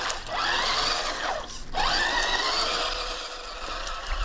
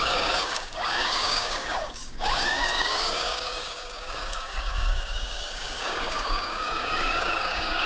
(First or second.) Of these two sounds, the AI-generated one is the second